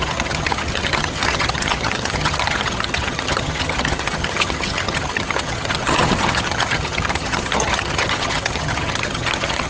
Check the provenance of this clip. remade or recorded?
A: remade